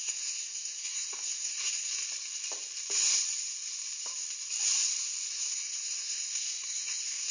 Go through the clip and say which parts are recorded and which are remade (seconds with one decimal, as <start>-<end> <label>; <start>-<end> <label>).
0.0-1.9 remade; 1.9-5.3 recorded; 5.3-7.3 remade